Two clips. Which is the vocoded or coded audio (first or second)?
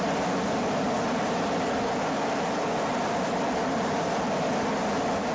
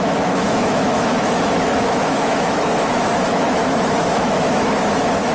second